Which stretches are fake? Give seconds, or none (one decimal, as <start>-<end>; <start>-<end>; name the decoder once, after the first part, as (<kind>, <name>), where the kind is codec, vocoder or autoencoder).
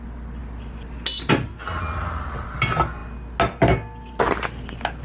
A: none